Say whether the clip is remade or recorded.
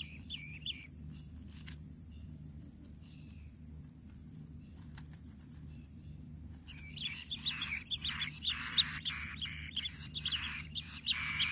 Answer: remade